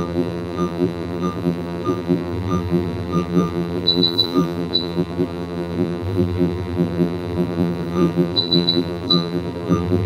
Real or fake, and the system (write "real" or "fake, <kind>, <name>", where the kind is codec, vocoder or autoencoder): fake, vocoder, BigVGAN v2